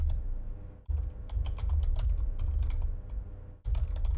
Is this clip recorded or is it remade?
recorded